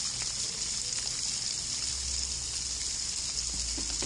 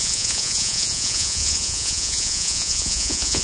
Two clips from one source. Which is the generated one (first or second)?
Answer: second